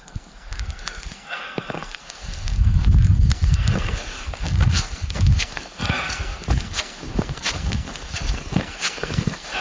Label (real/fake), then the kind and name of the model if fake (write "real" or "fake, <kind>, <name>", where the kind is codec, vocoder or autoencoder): fake, codec, SNAC